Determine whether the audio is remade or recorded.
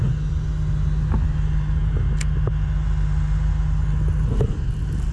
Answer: recorded